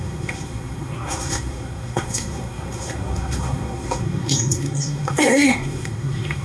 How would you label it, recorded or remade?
remade